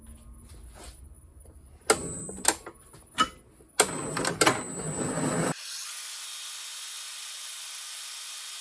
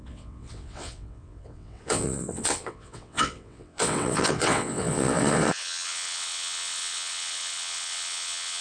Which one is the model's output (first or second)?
second